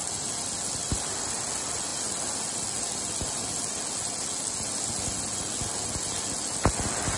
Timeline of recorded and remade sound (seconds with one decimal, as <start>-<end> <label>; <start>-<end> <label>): 0.0-7.2 recorded